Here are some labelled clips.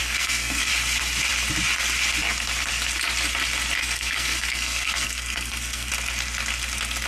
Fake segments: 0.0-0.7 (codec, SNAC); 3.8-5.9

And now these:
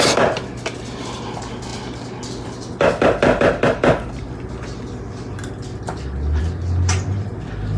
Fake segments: none

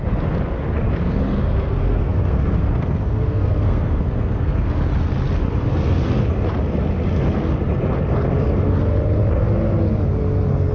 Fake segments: 1.3-4.7 (codec, SNAC)

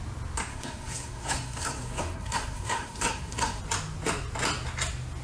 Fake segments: 0.5-3.6 (codec, SNAC)